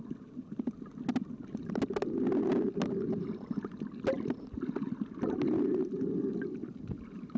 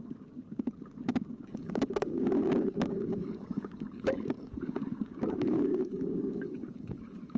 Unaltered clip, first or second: first